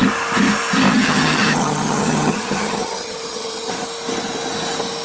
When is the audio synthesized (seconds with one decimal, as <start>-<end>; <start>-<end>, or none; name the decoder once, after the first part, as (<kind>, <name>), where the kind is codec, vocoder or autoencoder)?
0.9-3.7 (vocoder, HiFi-GAN)